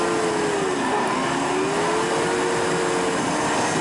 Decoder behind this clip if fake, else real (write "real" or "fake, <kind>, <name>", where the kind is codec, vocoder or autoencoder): real